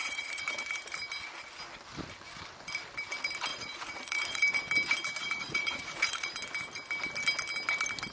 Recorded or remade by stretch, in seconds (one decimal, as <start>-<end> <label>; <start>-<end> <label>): 0.0-0.6 remade; 0.6-3.5 recorded; 3.5-4.4 remade; 4.4-5.2 recorded; 5.2-6.3 remade; 6.3-8.1 recorded